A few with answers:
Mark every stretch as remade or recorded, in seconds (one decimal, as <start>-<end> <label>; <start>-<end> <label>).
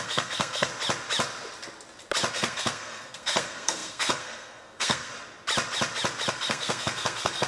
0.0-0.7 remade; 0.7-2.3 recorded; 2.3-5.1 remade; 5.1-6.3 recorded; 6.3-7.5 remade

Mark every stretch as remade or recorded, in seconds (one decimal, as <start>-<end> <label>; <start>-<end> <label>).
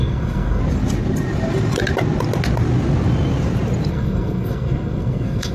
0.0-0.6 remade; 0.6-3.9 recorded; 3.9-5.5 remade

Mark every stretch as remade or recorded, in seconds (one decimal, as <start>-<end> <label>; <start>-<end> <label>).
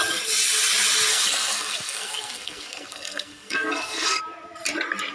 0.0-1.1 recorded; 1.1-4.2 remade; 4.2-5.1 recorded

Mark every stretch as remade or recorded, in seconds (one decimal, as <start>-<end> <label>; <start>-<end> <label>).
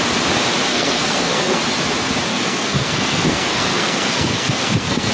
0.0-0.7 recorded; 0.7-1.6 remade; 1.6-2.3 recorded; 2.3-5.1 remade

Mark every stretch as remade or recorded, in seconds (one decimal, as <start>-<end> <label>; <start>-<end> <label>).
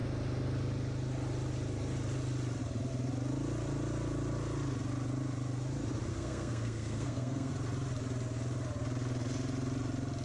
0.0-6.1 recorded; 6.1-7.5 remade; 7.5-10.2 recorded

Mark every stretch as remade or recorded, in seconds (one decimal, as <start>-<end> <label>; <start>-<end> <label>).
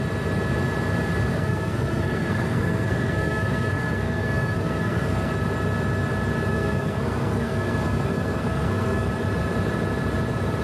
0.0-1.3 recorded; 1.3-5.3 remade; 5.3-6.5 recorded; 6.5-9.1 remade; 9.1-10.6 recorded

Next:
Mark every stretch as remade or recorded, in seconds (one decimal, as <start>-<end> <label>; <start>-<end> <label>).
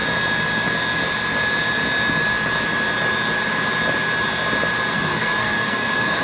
0.0-4.9 recorded; 4.9-6.2 remade